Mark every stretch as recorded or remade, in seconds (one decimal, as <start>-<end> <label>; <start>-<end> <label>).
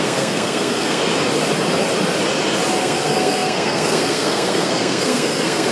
0.0-1.0 remade; 1.0-2.8 recorded; 2.8-5.7 remade